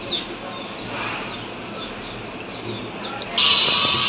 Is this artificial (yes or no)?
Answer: no